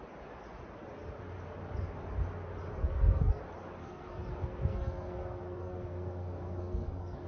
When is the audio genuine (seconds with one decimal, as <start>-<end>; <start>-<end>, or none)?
0.0-2.8; 3.4-3.8